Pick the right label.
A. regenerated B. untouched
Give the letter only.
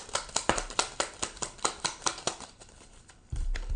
A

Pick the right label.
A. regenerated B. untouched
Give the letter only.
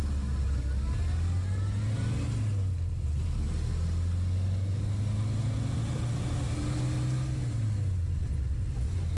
B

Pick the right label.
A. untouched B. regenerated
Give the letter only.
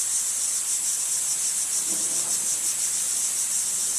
B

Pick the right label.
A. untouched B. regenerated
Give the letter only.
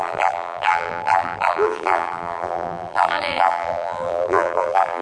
B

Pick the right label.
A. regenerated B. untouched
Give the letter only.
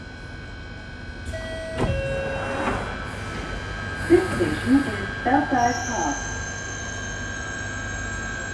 B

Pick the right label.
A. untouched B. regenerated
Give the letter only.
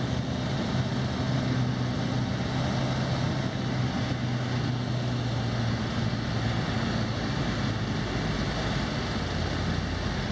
A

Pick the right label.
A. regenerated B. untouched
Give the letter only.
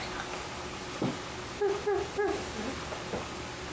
B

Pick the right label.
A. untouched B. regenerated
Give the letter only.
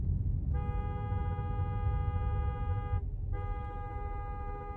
A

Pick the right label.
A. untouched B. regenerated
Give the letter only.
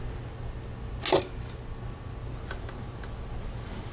A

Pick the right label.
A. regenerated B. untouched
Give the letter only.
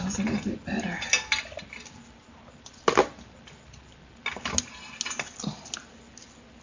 B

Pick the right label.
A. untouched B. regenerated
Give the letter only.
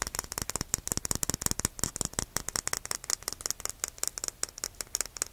A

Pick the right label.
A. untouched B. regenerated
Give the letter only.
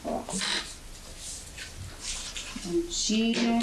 A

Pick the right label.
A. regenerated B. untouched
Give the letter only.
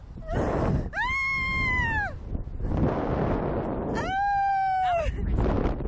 B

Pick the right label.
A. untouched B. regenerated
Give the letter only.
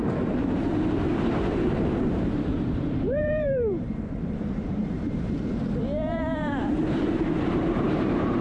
B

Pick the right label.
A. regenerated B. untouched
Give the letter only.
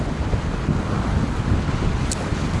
B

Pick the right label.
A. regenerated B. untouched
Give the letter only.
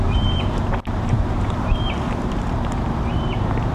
A